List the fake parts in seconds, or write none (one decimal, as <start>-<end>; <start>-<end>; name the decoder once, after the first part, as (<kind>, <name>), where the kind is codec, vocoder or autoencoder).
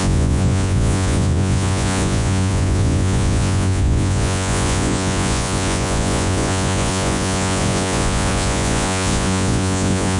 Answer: 0.0-10.2 (vocoder, Vocos)